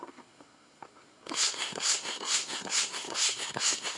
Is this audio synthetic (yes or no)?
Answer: yes